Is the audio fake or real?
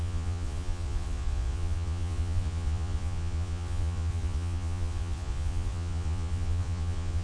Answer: fake